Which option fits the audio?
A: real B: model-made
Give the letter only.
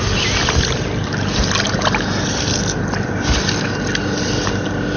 A